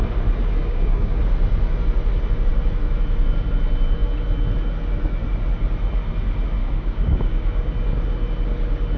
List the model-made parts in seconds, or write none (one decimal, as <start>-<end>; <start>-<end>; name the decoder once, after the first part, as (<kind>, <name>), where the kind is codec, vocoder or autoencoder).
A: 0.6-1.2 (codec, DAC); 6.6-7.7